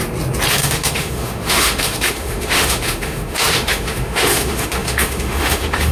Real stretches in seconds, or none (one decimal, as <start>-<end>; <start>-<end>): 0.0-0.5